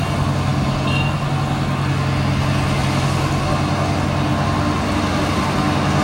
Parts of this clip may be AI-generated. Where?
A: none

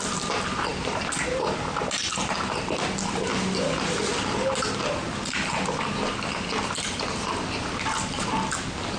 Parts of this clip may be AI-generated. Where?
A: none